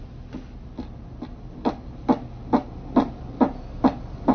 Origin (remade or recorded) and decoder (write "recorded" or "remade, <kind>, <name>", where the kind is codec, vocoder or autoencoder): recorded